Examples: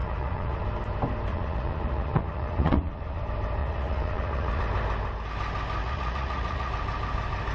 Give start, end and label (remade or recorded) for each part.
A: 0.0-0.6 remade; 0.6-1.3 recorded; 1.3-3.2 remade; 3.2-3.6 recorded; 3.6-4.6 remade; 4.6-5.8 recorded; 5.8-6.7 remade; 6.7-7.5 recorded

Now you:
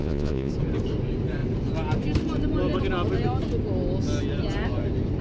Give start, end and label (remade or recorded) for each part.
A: 0.0-0.5 remade; 0.5-5.2 recorded

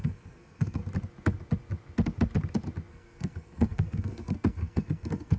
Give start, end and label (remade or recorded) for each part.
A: 0.0-0.8 remade; 0.8-2.9 recorded; 2.9-5.4 remade

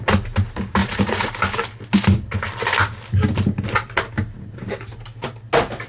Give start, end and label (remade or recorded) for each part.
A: 0.0-0.8 recorded; 0.8-1.3 remade; 1.3-5.9 recorded

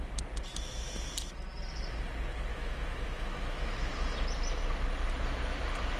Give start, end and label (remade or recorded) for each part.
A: 0.0-2.5 recorded; 2.5-3.9 remade; 3.9-6.0 recorded